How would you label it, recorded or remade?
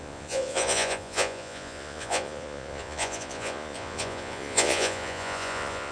remade